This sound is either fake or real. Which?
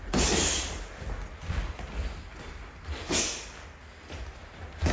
real